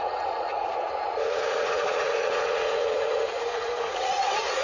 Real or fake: fake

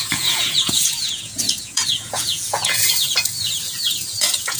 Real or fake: fake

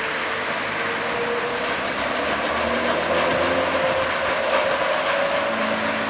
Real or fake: real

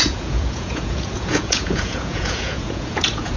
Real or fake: fake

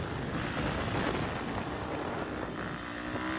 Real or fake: real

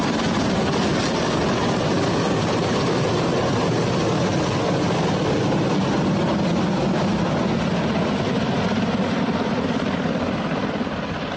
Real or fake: real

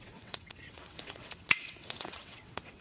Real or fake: fake